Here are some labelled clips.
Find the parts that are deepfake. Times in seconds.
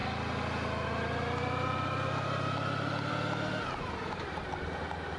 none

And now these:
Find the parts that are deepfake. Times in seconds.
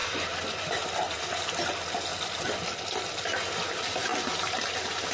0.0-1.2 (vocoder, BigVGAN v2); 2.1-3.1; 4.1-4.6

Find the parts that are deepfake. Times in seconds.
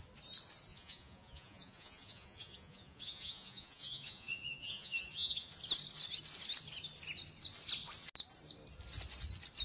0.7-5.5 (vocoder, Vocos)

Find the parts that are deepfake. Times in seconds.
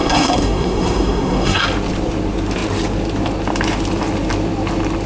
0.0-1.6 (codec, SNAC)